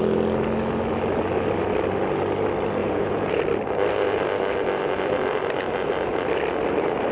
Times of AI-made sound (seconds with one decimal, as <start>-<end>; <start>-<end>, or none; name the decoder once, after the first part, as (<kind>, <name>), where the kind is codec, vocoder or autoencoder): 2.8-3.4 (vocoder, Vocos)